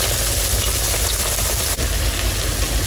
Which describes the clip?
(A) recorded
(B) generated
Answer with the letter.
A